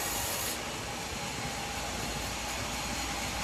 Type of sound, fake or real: real